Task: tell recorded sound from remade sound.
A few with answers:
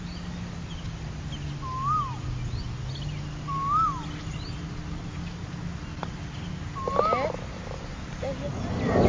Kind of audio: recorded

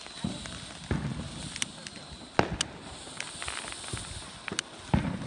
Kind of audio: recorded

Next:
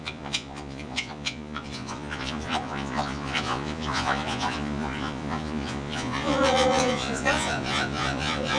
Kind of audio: remade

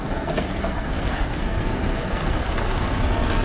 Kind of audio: remade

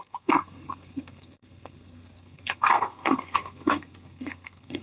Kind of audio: remade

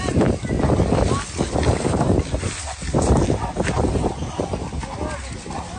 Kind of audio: recorded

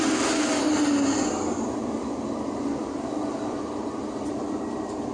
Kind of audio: recorded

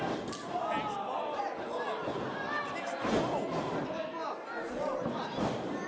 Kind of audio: recorded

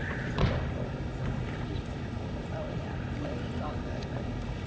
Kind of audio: recorded